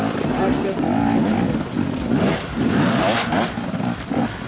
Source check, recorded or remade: recorded